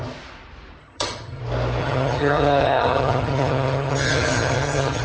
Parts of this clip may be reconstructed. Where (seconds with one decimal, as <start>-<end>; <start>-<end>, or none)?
0.8-1.4; 1.8-5.0